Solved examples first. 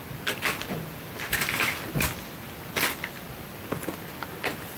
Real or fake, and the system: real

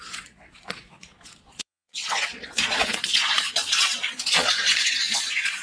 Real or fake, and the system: fake, vocoder, Vocos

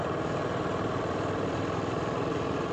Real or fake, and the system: real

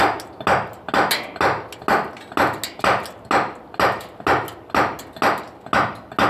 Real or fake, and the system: real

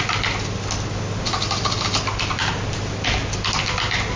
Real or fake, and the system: real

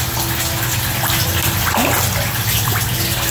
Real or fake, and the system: real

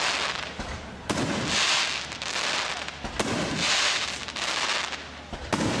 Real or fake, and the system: real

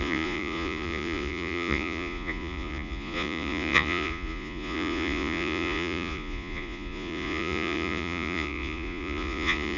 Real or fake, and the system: fake, vocoder, Vocos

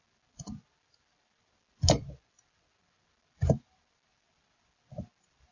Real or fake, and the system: real